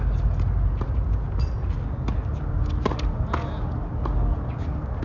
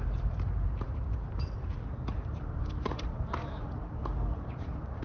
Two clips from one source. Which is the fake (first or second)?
second